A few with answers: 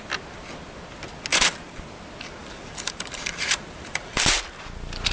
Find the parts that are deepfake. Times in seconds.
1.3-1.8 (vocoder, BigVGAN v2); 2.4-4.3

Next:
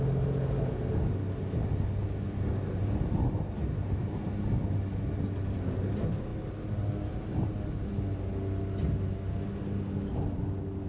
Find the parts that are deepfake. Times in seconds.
none

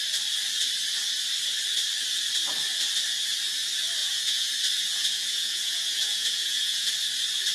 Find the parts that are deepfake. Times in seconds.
4.0-4.5 (vocoder, Vocos); 4.9-6.9

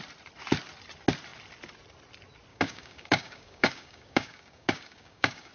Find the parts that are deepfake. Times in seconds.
2.5-5.5 (codec, DAC)

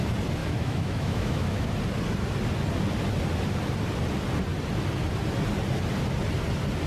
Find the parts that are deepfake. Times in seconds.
0.4-1.7 (autoencoder, DAC-VAE)